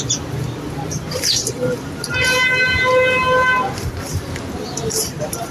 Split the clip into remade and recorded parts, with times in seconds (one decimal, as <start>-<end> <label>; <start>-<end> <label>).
0.0-5.5 recorded